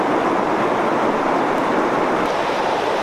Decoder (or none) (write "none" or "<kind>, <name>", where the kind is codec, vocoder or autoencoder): none